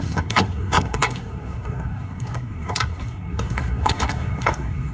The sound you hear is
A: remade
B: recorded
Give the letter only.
A